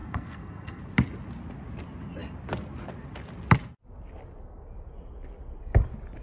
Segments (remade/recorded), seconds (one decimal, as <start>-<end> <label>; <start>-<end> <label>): 0.0-0.8 remade; 0.8-6.2 recorded